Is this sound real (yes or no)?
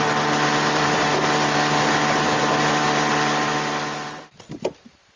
no